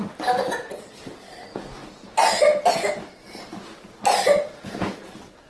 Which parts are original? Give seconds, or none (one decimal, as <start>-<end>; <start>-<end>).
0.0-5.5